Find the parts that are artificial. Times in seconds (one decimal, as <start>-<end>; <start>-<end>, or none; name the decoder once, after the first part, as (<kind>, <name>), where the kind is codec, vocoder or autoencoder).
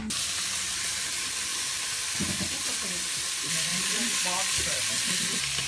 none